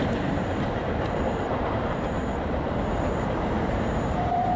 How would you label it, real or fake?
fake